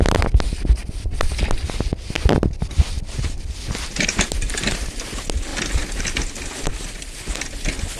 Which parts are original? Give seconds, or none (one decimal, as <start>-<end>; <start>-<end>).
0.0-8.0